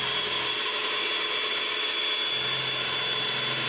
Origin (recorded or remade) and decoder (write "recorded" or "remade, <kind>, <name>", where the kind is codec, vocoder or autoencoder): recorded